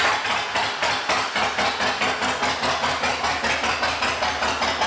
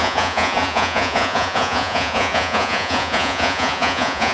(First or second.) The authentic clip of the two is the first